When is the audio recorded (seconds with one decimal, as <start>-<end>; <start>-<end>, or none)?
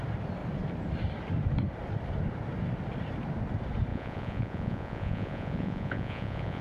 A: 0.0-3.9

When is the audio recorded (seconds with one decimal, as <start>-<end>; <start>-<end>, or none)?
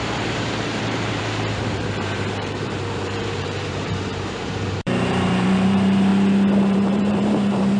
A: 6.1-6.6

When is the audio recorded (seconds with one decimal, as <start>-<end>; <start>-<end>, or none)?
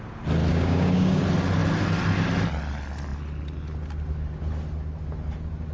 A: 0.0-0.5; 1.2-5.7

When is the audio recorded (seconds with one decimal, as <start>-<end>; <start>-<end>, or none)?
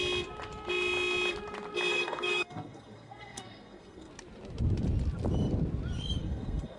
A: 0.0-1.9; 4.1-6.2